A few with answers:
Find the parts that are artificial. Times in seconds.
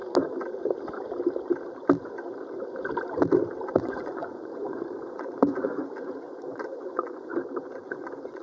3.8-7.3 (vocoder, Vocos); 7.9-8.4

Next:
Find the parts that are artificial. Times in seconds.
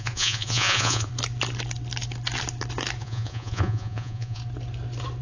0.0-1.1 (vocoder, Vocos); 3.0-4.4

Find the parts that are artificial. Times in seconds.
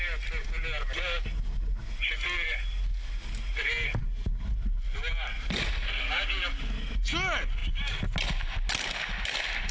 none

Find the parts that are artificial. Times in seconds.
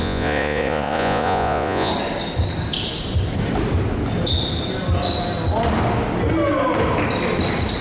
0.0-1.9 (vocoder, Vocos)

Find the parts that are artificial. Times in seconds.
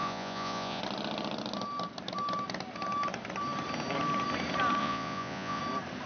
0.0-0.8 (vocoder, Vocos); 4.8-5.6